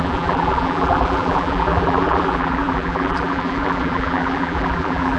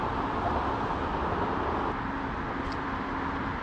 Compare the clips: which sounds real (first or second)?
second